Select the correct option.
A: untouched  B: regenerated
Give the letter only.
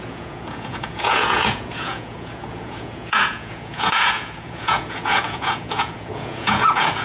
B